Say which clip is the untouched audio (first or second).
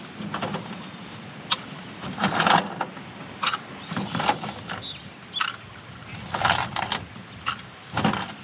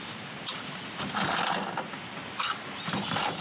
second